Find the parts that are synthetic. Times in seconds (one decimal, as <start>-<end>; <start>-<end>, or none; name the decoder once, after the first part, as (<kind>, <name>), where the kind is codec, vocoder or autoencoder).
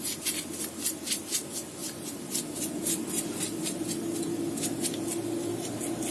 none